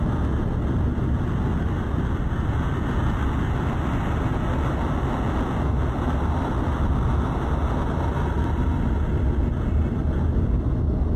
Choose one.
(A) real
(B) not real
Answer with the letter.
A